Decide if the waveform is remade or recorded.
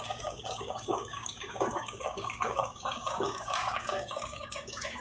remade